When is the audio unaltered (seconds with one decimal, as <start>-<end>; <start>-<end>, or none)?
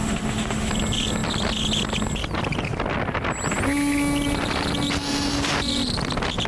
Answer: 0.7-6.5